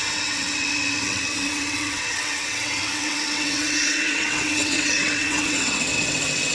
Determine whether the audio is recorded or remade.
remade